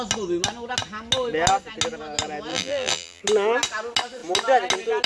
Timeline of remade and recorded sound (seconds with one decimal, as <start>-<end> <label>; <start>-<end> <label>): 0.0-2.5 recorded; 2.5-3.2 remade; 3.2-5.1 recorded